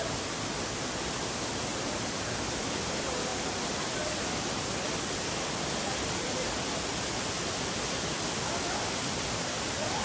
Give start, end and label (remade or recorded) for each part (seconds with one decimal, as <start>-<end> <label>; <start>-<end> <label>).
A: 0.0-10.0 recorded